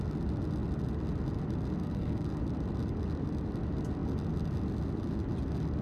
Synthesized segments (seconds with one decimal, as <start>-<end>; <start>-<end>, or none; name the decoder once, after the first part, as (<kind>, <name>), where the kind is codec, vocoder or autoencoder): 1.8-2.4 (codec, SNAC)